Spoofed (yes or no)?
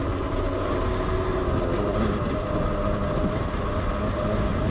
no